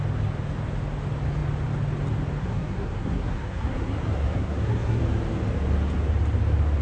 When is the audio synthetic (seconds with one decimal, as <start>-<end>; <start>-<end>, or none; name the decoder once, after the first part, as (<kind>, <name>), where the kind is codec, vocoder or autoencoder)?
2.4-5.0 (codec, SNAC)